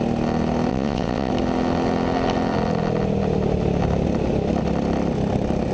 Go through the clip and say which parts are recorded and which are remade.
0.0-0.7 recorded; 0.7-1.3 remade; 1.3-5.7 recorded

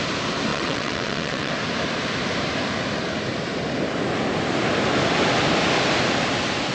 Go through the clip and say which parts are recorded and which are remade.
0.0-0.5 recorded; 0.5-1.5 remade; 1.5-6.7 recorded

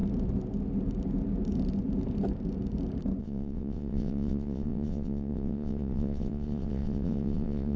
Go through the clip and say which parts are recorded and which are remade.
0.0-3.2 recorded; 3.2-7.8 remade

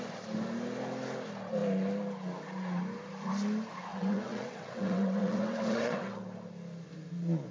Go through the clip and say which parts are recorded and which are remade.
0.0-3.9 recorded; 3.9-6.2 remade; 6.2-7.5 recorded

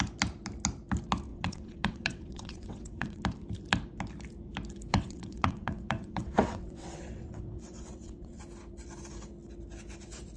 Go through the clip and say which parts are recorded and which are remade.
0.0-1.3 recorded; 1.3-3.2 remade; 3.2-4.9 recorded; 4.9-8.4 remade; 8.4-10.4 recorded

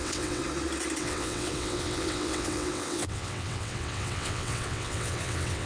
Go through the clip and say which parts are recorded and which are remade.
0.0-0.4 remade; 0.4-1.0 recorded; 1.0-5.7 remade